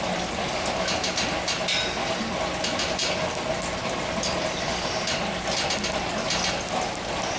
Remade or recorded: recorded